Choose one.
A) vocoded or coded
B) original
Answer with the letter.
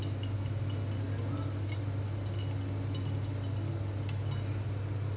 B